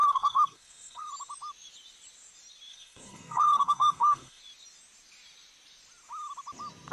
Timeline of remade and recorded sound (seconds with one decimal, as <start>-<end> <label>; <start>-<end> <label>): 0.0-1.1 remade; 1.1-2.7 recorded; 2.7-4.4 remade; 4.4-6.9 recorded